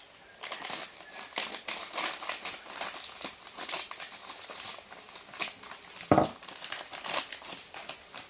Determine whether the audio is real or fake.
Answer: real